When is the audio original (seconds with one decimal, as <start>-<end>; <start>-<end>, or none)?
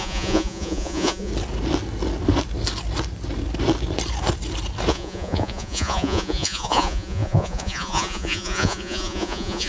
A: 1.3-4.9